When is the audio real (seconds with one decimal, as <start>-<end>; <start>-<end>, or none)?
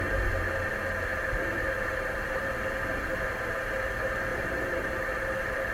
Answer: 0.0-1.1; 2.5-4.3